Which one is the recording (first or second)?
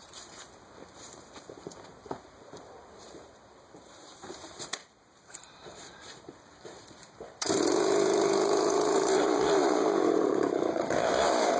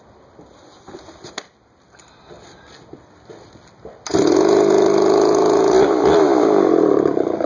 second